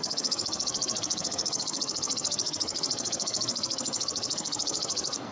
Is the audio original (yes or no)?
no